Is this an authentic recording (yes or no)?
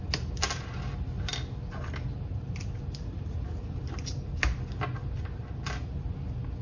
yes